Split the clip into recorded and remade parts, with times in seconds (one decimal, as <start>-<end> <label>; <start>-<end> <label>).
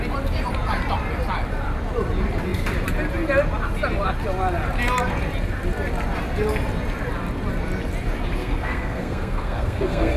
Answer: 0.0-8.4 recorded; 8.4-10.2 remade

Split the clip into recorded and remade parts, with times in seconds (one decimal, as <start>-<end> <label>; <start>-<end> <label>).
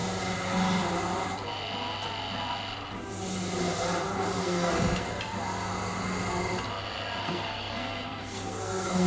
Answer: 0.0-4.4 recorded; 4.4-5.1 remade; 5.1-7.2 recorded; 7.2-9.1 remade